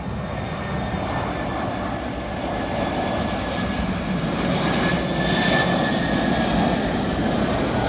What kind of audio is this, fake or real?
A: real